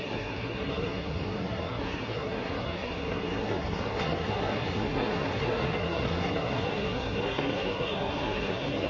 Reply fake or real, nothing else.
fake